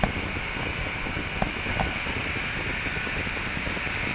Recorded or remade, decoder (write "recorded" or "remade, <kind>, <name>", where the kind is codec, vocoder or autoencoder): recorded